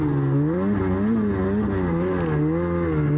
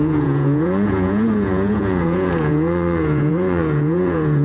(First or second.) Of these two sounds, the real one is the first